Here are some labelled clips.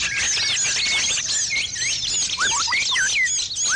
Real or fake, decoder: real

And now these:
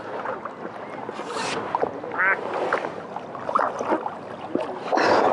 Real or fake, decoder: real